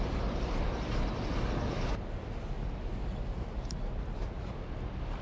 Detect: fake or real real